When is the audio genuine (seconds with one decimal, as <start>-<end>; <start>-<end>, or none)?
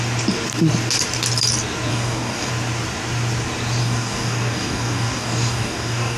0.0-1.9; 2.5-3.8